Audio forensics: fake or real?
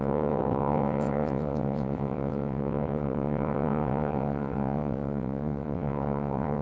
fake